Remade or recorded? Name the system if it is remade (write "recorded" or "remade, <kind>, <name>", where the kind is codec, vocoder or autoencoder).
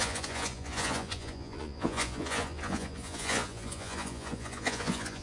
remade, vocoder, Vocos